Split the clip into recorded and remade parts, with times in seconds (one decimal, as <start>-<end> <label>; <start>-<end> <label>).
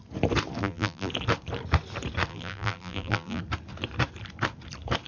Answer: 0.0-0.6 recorded; 0.6-1.1 remade; 1.1-2.3 recorded; 2.3-3.4 remade; 3.4-5.1 recorded